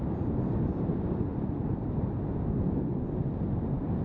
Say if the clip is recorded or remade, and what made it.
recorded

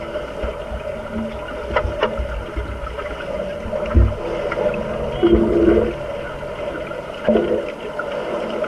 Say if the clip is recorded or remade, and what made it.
recorded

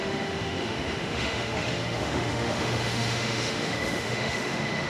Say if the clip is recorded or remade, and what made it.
remade, autoencoder, DAC-VAE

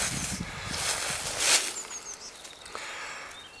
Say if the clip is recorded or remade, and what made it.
recorded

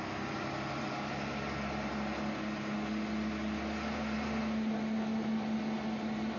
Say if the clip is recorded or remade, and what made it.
recorded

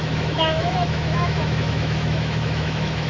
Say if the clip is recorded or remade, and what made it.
remade, autoencoder, DAC-VAE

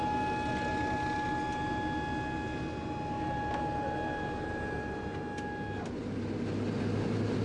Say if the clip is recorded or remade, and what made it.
recorded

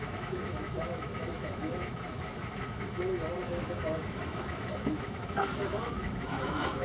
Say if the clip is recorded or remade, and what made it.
remade, autoencoder, DAC-VAE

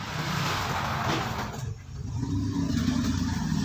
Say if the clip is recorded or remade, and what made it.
recorded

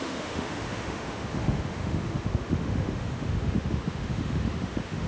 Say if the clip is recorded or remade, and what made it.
remade, autoencoder, DAC-VAE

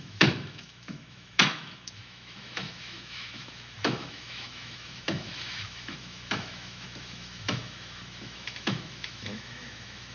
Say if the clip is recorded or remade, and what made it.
remade, autoencoder, DAC-VAE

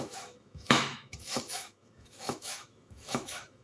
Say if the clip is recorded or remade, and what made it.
remade, autoencoder, DAC-VAE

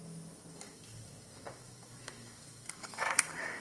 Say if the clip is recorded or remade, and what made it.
remade, autoencoder, DAC-VAE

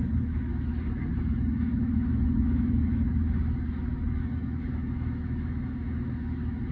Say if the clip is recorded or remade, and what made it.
remade, autoencoder, DAC-VAE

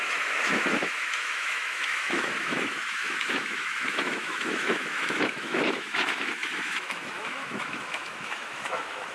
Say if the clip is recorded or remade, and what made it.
remade, autoencoder, DAC-VAE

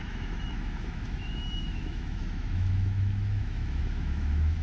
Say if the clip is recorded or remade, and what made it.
remade, autoencoder, DAC-VAE